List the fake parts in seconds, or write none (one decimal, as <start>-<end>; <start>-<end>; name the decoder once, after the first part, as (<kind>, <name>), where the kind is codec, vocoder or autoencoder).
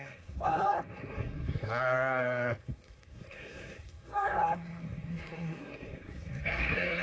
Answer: 0.0-7.0 (codec, SNAC)